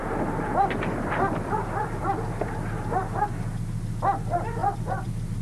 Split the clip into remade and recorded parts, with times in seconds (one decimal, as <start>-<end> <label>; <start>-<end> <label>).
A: 0.0-3.2 remade; 3.2-4.6 recorded; 4.6-5.4 remade